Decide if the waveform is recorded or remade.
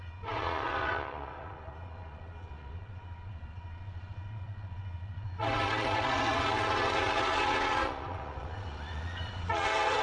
remade